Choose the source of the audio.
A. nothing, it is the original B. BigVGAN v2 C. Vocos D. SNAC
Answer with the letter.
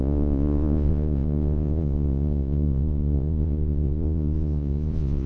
C